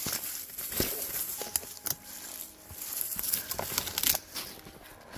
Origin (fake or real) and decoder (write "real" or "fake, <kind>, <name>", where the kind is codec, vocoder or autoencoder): real